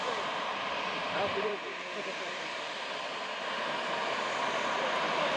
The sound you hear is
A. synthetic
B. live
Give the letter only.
A